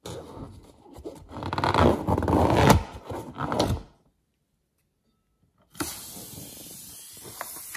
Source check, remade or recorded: recorded